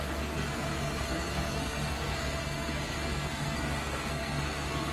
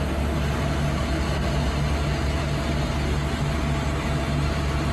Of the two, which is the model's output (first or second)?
first